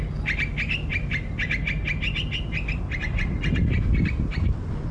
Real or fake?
real